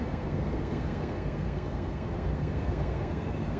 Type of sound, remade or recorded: remade